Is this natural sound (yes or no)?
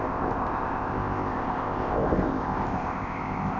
no